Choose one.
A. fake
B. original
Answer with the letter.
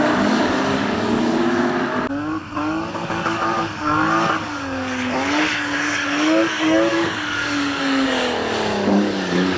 A